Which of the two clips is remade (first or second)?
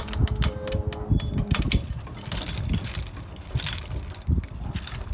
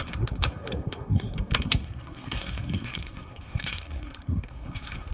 second